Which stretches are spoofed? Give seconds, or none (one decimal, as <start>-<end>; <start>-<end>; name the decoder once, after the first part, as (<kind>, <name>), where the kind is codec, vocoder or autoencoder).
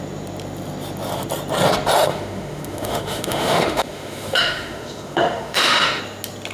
2.1-6.0 (autoencoder, DAC-VAE)